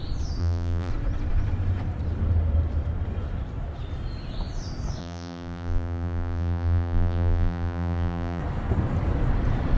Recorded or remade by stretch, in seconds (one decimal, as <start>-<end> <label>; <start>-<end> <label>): 0.0-0.4 recorded; 0.4-0.9 remade; 0.9-5.0 recorded; 5.0-8.4 remade; 8.4-9.8 recorded